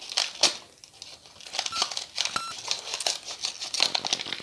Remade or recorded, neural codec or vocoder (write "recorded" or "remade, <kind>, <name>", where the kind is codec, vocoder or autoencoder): recorded